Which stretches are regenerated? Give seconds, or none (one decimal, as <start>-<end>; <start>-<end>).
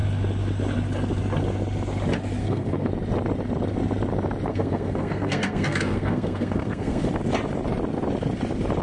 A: 2.4-2.9; 4.5-7.1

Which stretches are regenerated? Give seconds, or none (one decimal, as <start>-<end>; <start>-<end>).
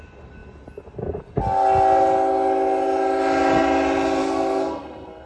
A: 4.2-5.3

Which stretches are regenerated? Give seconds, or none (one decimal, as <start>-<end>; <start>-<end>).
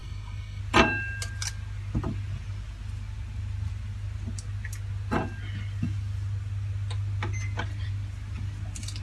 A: 0.0-0.6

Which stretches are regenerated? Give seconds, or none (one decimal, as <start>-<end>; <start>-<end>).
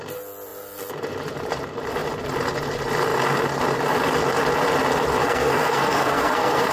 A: 5.2-6.7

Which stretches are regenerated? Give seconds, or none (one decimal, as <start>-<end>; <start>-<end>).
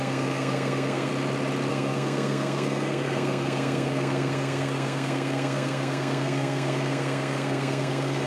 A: 0.0-1.1; 1.7-8.3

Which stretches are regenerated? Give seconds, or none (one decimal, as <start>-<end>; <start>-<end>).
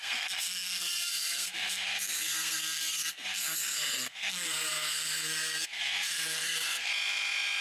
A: 0.0-6.9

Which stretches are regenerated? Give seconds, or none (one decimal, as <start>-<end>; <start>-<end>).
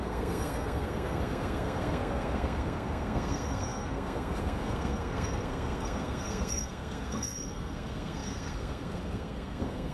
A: 0.0-9.9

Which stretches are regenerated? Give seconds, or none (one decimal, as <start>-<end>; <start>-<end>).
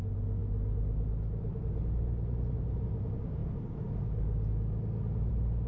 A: none